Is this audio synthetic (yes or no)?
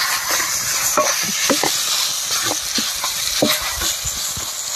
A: no